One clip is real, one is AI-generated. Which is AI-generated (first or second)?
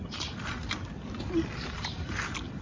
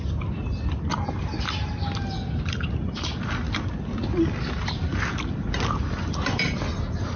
first